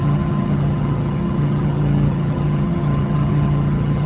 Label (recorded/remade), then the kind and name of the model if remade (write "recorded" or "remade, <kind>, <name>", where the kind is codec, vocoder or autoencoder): remade, vocoder, HiFi-GAN